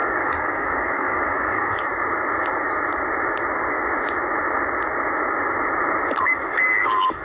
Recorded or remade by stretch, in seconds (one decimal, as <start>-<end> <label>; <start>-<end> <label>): 0.0-1.9 remade; 1.9-6.2 recorded; 6.2-7.2 remade